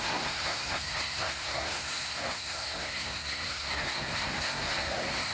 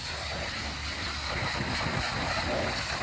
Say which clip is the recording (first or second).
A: second